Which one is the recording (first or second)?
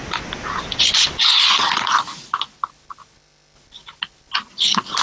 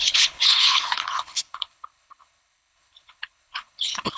first